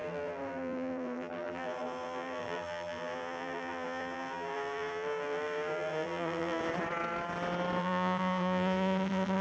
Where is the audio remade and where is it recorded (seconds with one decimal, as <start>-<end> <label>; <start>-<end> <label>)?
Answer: 0.0-6.6 remade; 6.6-7.8 recorded; 7.8-9.4 remade